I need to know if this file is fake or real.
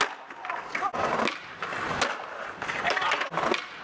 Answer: real